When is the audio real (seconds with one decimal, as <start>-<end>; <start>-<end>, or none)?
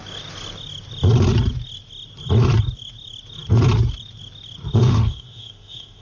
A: 0.0-4.8